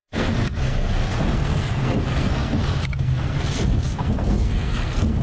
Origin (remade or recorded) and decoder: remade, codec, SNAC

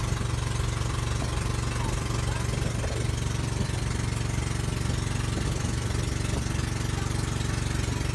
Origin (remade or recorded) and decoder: recorded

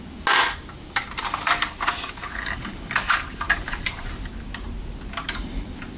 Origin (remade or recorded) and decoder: recorded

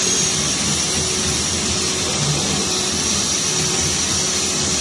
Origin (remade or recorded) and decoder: recorded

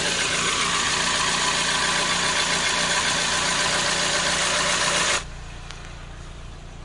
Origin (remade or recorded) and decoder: recorded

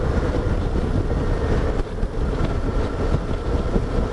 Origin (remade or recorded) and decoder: recorded